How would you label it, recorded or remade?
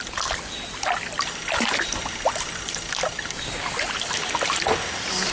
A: recorded